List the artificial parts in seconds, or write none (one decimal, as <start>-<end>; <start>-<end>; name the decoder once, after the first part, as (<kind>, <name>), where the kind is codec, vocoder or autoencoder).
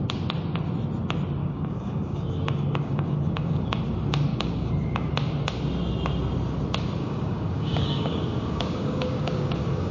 1.4-3.8 (codec, DAC); 4.3-5.1; 7.0-9.9